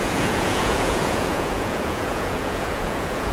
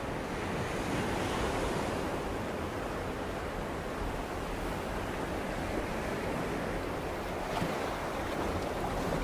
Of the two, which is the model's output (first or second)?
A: first